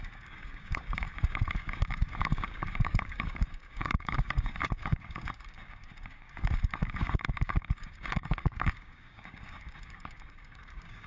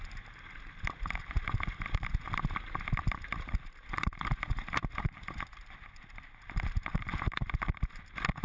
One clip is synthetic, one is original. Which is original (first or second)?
second